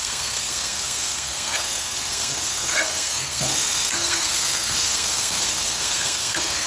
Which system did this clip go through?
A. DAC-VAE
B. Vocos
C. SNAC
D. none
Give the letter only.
C